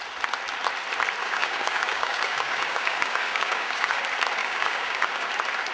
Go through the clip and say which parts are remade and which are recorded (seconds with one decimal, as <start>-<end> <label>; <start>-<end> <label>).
0.0-1.2 recorded; 1.2-4.0 remade; 4.0-4.4 recorded; 4.4-5.3 remade; 5.3-5.7 recorded